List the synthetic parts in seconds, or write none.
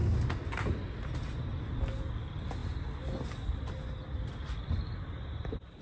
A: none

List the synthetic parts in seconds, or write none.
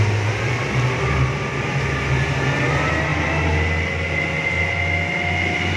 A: none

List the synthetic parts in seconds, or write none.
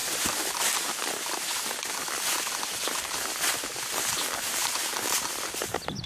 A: 0.0-1.1 (vocoder, BigVGAN v2); 3.7-6.1